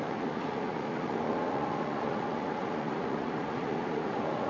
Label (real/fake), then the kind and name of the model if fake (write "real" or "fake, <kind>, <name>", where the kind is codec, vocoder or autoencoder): fake, vocoder, Vocos